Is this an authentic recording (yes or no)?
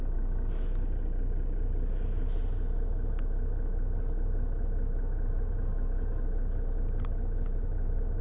yes